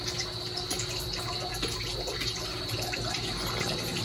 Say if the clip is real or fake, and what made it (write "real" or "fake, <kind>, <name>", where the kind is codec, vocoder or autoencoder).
real